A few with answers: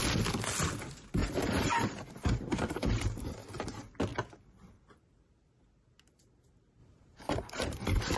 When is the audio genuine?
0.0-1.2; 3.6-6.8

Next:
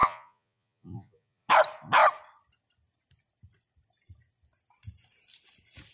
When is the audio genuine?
1.5-5.9

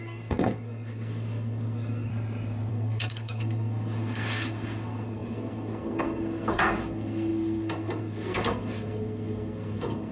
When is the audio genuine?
2.1-2.7

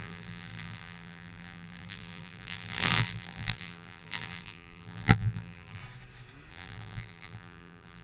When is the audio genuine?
5.8-6.5

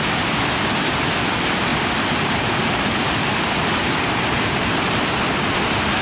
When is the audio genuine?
0.0-6.0

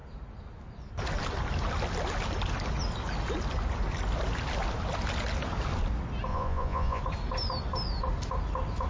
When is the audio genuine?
0.0-6.3; 7.0-8.9

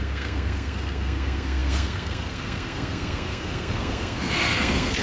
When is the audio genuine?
none

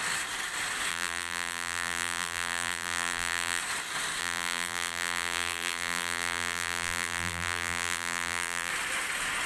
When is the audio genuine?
0.0-0.9; 3.6-4.2; 8.7-9.5